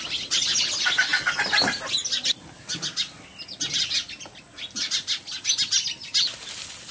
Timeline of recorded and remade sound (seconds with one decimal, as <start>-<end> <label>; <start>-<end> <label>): 0.0-6.9 recorded